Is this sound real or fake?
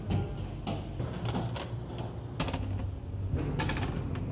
real